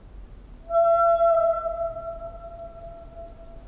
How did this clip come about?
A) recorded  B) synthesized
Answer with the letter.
A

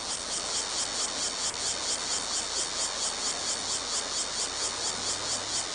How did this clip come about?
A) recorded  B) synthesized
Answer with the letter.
A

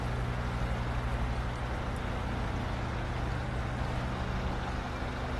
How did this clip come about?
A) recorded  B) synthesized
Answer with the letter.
A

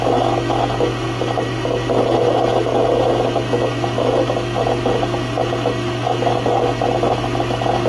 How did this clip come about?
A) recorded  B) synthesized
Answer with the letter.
B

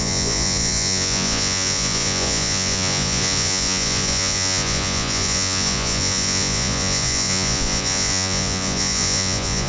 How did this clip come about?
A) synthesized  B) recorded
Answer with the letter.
A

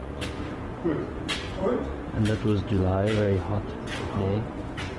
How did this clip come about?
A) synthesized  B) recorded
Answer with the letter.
A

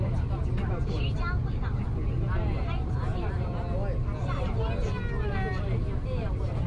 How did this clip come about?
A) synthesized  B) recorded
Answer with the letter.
B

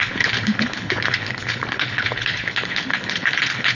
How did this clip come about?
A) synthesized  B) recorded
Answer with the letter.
A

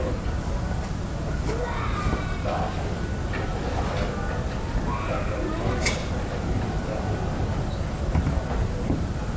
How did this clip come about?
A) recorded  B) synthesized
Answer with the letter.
A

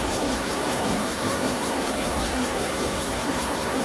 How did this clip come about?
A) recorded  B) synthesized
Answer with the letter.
B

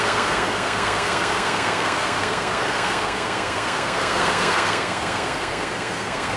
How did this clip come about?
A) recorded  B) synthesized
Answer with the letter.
B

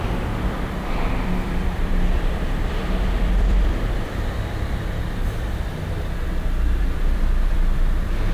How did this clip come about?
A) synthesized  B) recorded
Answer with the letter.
A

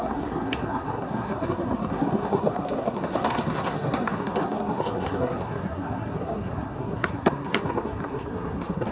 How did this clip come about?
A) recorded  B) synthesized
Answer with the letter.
B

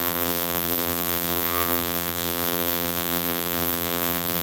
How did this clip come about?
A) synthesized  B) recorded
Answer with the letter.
A